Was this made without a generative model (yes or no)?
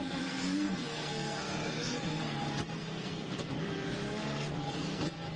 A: no